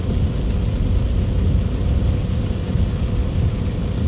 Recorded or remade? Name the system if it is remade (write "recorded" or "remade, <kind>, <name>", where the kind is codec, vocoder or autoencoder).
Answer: recorded